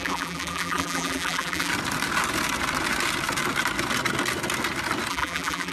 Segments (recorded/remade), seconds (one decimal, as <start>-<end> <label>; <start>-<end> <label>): 0.0-1.7 remade; 1.7-5.1 recorded; 5.1-5.7 remade